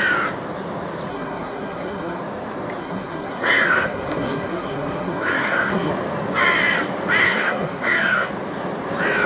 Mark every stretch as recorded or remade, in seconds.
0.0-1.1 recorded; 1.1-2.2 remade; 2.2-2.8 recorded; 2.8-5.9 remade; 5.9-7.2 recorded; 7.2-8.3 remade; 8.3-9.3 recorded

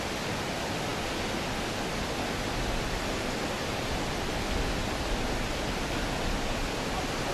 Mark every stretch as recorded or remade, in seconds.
0.0-7.3 recorded

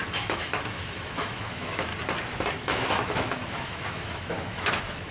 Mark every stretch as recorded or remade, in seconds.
0.0-1.9 remade; 1.9-2.5 recorded; 2.5-5.1 remade

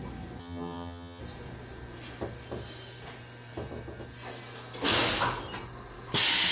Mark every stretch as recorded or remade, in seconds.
0.0-0.4 recorded; 0.4-1.2 remade; 1.2-6.5 recorded

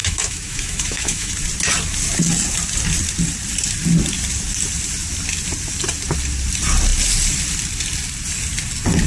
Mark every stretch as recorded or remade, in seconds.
0.0-1.3 remade; 1.3-9.1 recorded

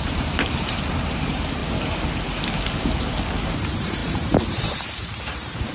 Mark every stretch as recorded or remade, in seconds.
0.0-1.6 remade; 1.6-3.0 recorded; 3.0-5.7 remade

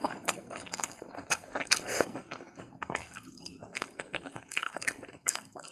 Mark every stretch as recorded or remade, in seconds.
0.0-5.7 remade